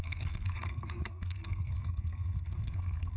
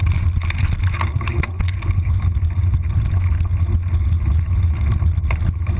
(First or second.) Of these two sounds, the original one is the second